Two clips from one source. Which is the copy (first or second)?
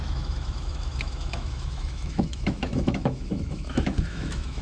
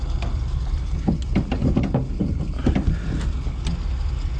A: first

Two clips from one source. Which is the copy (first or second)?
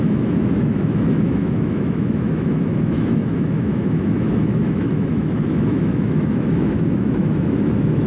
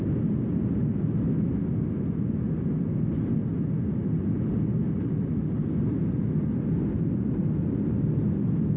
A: first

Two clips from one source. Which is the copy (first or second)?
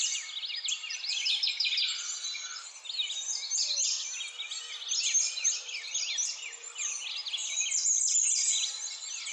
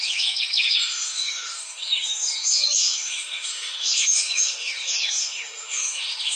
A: second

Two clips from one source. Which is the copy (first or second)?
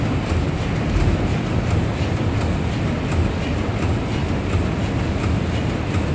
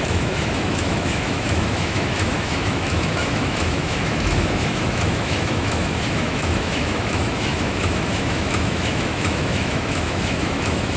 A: second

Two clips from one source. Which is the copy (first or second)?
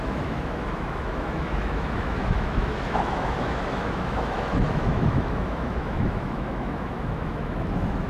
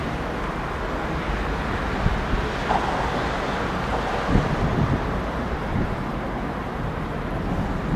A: first